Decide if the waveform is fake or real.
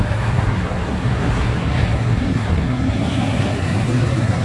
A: fake